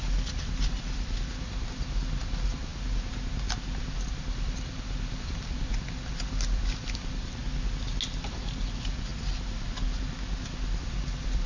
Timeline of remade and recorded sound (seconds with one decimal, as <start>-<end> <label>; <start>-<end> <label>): 0.0-2.7 remade; 2.7-3.9 recorded; 3.9-7.4 remade; 7.4-8.1 recorded; 8.1-9.1 remade; 9.1-10.8 recorded; 10.8-11.5 remade